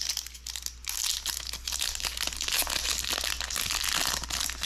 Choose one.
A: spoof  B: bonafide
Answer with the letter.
B